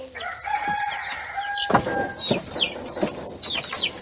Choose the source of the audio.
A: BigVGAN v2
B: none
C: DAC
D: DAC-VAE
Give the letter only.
B